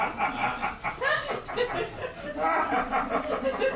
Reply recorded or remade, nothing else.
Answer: recorded